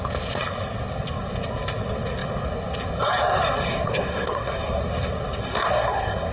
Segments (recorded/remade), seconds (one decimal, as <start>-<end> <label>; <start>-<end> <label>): 0.0-3.7 recorded; 3.7-4.8 remade; 4.8-5.4 recorded; 5.4-6.3 remade